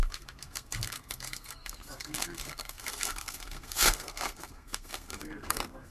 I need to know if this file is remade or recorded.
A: remade